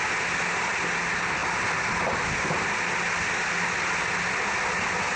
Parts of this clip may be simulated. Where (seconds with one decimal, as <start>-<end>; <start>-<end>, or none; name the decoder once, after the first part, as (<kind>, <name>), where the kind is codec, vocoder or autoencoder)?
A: none